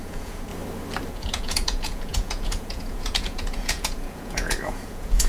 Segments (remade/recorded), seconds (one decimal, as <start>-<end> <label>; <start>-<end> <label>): 0.0-0.5 remade; 0.5-1.1 recorded; 1.1-5.3 remade